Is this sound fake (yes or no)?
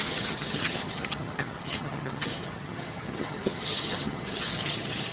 yes